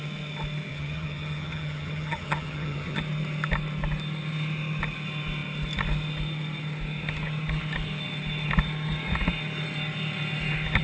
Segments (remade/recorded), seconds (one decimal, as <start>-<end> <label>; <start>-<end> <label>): 0.0-0.7 recorded; 0.7-3.0 remade; 3.0-10.8 recorded